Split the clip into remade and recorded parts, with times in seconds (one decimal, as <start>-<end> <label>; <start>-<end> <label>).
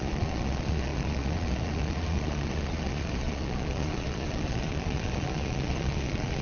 0.0-6.4 remade